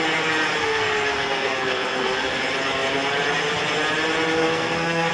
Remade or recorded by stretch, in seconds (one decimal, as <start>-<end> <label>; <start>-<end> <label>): 0.0-0.6 recorded; 0.6-2.4 remade; 2.4-4.4 recorded; 4.4-5.1 remade